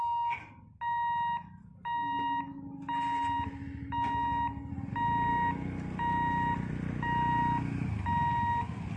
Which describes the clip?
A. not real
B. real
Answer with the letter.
B